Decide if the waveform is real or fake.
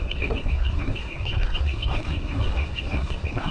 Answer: fake